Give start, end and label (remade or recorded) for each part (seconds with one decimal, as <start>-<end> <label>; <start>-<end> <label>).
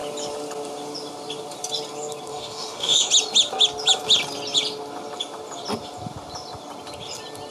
0.0-2.3 recorded; 2.3-3.1 remade; 3.1-7.5 recorded